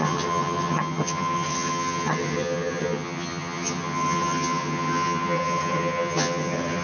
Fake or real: fake